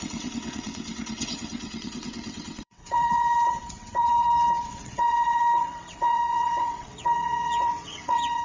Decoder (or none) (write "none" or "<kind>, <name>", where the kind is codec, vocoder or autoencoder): vocoder, WaveNeXt